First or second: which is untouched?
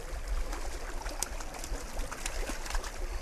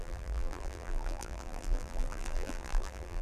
first